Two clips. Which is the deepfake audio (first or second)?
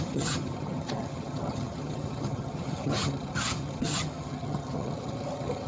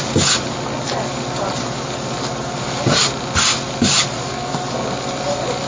first